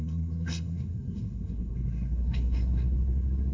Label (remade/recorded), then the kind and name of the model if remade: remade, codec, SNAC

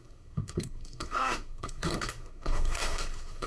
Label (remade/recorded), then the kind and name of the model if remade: remade, codec, SNAC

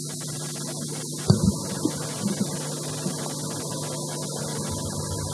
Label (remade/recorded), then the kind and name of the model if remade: recorded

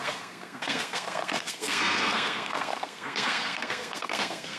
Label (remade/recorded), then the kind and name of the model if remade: remade, codec, SNAC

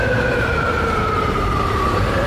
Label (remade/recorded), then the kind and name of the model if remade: remade, vocoder, BigVGAN v2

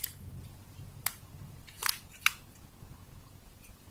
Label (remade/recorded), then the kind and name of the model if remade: remade, vocoder, Vocos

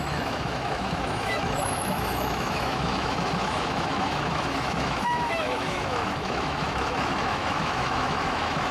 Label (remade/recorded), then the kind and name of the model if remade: remade, autoencoder, DAC-VAE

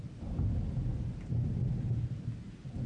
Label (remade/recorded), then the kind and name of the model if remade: recorded